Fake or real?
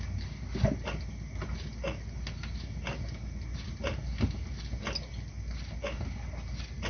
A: real